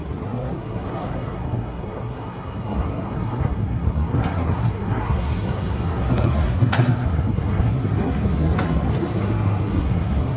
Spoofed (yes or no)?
yes